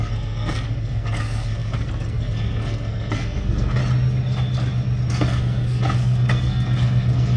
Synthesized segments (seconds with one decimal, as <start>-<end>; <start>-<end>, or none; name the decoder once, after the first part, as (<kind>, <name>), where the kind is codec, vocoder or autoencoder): 0.0-3.8 (codec, SNAC); 5.1-7.4